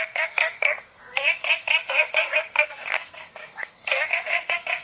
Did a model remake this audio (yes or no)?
yes